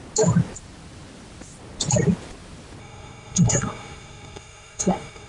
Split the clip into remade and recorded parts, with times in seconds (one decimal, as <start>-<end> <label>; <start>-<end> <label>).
0.0-2.8 recorded; 2.8-5.3 remade